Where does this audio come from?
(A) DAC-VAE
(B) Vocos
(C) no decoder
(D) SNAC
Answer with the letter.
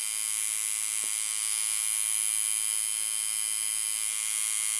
C